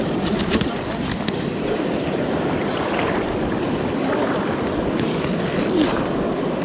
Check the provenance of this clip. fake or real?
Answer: real